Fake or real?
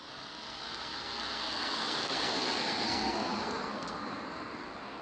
fake